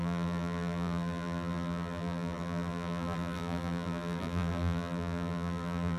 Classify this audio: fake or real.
fake